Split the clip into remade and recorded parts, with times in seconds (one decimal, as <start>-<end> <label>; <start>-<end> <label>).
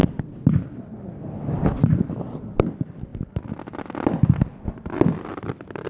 0.0-2.4 remade; 2.4-3.1 recorded; 3.1-5.9 remade